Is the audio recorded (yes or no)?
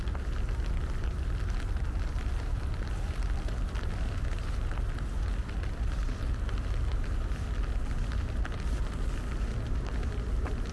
yes